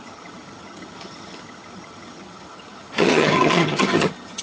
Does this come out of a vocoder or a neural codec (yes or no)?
yes